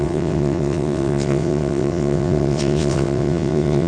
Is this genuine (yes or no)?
no